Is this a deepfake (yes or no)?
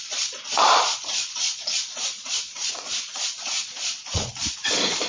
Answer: yes